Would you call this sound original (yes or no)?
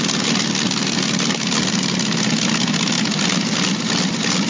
yes